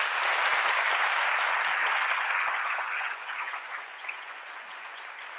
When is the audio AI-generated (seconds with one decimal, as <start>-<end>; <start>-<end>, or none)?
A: 1.8-5.0